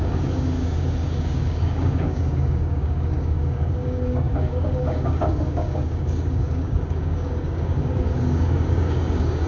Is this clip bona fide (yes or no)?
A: no